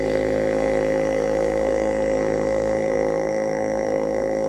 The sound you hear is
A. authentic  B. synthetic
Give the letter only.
B